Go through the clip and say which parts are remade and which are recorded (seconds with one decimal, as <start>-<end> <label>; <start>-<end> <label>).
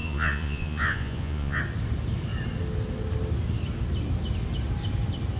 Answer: 0.0-1.6 remade; 1.6-5.4 recorded